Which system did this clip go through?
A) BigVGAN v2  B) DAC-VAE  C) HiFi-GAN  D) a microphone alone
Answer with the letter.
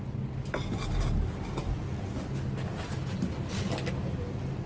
D